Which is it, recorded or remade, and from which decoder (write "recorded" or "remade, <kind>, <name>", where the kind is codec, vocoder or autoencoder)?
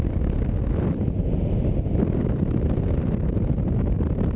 recorded